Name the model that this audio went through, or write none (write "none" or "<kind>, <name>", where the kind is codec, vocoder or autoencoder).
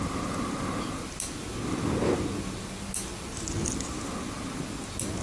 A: none